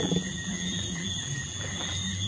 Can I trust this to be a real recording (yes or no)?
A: no